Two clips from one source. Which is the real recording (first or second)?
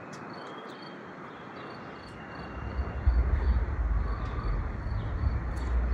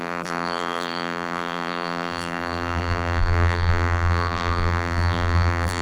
first